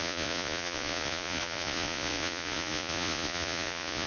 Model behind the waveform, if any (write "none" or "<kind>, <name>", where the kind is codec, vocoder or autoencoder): vocoder, Vocos